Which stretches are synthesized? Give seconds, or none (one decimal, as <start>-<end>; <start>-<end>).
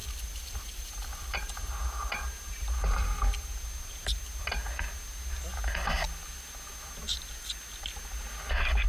0.0-1.5